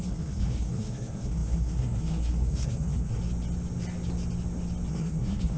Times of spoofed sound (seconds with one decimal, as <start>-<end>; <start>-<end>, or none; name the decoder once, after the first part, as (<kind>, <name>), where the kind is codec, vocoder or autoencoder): 0.0-3.2 (codec, SNAC); 4.9-5.6